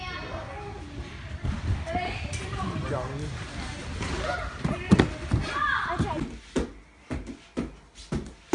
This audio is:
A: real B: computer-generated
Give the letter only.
A